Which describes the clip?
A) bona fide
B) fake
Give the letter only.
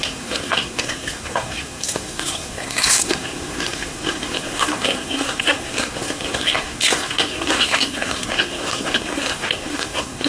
B